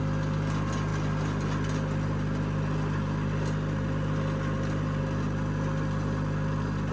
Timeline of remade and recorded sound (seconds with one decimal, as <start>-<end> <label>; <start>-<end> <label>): 0.0-6.9 recorded